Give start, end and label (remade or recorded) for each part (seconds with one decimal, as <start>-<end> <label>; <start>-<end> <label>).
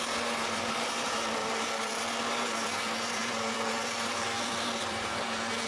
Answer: 0.0-5.7 remade